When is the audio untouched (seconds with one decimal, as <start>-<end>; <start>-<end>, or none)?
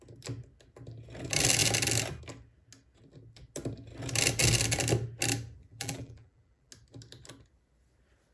0.0-5.7; 6.7-8.3